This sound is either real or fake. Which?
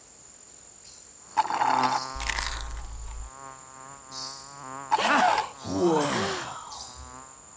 real